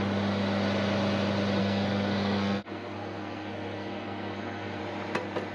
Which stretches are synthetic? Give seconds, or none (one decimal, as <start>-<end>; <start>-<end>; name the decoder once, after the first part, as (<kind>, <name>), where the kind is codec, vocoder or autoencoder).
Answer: 1.6-4.8 (codec, SNAC)